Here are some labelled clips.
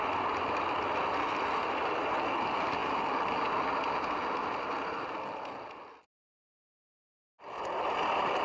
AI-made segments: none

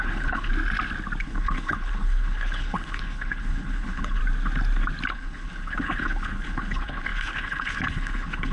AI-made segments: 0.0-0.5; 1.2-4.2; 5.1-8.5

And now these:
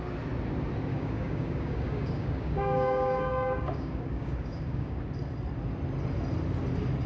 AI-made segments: 0.9-5.0